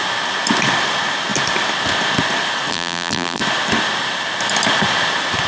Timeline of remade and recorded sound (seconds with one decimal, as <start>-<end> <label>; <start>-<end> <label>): 0.0-2.7 recorded; 2.7-3.4 remade; 3.4-5.5 recorded